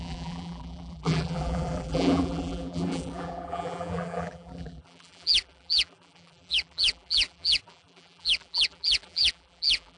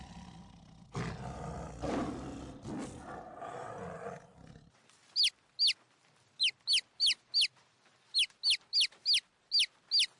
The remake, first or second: first